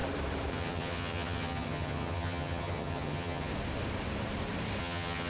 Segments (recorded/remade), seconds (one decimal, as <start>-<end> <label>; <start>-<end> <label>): 0.0-0.5 recorded; 0.5-3.5 remade; 3.5-4.8 recorded; 4.8-5.3 remade